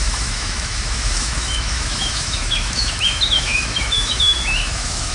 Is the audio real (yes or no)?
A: no